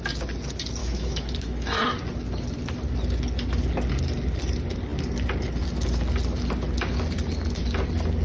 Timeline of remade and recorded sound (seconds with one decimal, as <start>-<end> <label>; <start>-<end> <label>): 0.0-0.8 recorded; 0.8-1.8 remade; 1.8-8.2 recorded